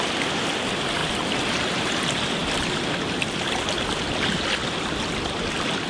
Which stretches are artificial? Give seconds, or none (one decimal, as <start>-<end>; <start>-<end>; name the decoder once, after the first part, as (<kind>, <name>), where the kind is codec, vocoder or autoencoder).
none